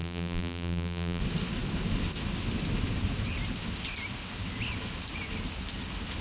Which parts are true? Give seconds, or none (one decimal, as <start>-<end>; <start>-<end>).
1.2-6.2